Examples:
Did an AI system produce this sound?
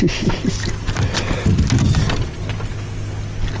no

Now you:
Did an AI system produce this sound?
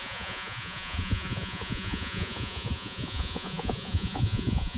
yes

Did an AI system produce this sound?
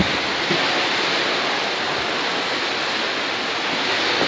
no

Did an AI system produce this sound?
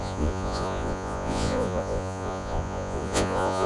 yes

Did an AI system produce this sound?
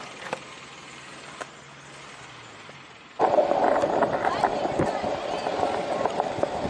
no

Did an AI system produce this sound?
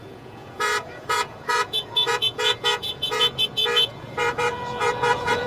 yes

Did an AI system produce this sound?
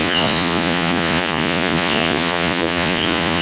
yes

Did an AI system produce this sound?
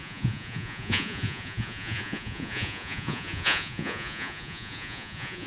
yes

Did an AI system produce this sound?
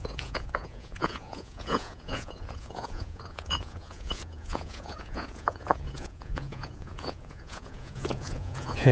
yes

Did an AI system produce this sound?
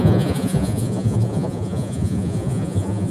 yes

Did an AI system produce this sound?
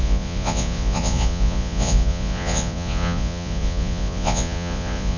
yes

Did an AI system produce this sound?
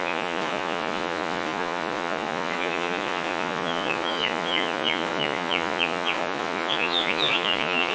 yes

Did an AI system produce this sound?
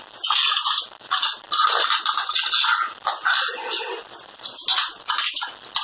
no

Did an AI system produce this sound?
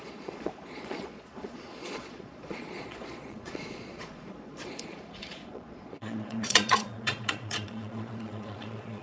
yes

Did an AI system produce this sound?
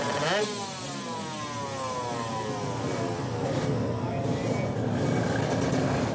no